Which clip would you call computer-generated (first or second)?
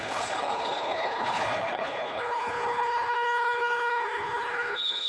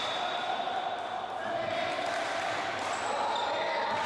first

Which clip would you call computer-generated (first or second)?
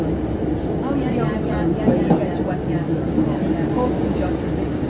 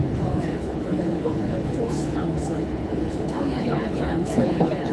second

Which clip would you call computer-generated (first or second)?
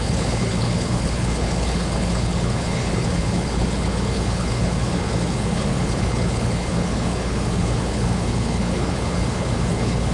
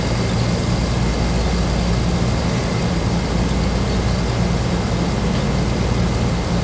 first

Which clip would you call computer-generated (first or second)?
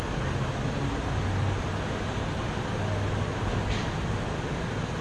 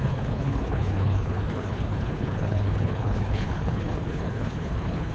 second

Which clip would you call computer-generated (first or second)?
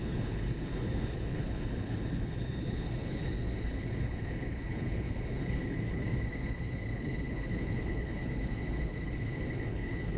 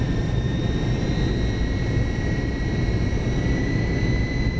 first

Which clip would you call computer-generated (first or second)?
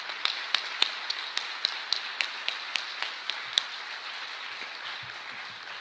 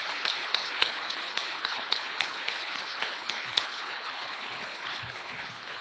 second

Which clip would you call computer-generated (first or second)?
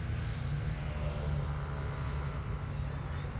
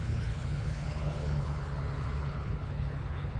second